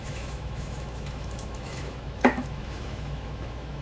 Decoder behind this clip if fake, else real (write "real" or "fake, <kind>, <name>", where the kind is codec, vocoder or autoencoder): fake, autoencoder, DAC-VAE